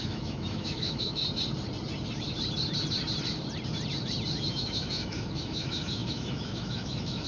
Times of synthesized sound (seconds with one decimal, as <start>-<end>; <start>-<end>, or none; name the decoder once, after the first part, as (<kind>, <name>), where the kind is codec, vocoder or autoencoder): 0.0-1.2 (autoencoder, DAC-VAE); 4.5-7.3